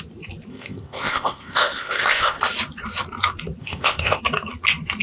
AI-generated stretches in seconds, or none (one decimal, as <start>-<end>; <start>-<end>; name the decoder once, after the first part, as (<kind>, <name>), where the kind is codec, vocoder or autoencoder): 0.5-2.4 (codec, ZipCodec); 3.6-4.2